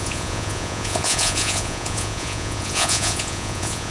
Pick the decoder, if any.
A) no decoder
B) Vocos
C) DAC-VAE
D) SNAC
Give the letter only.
B